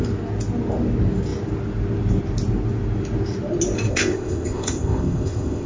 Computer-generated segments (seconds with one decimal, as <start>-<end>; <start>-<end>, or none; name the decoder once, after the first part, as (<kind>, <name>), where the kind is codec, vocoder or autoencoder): 3.9-5.7 (codec, ZipCodec)